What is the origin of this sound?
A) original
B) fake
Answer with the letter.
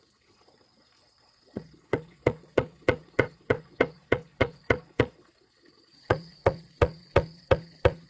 B